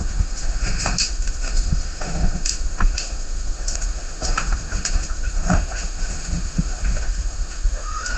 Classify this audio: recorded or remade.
remade